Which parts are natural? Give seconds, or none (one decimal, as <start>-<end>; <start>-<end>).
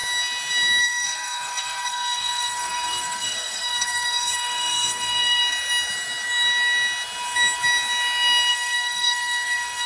0.0-0.8; 5.4-8.5